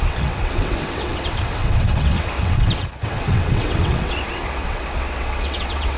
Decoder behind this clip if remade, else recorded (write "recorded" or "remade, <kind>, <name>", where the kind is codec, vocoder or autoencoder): remade, vocoder, WaveNeXt